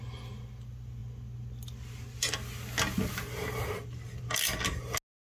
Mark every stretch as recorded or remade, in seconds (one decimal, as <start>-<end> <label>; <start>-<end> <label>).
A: 0.0-5.3 recorded